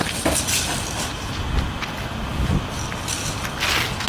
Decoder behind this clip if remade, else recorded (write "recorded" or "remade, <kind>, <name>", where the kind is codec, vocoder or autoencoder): recorded